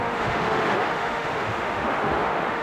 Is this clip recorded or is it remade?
remade